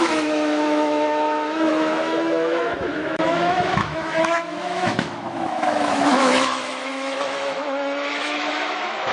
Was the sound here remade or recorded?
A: remade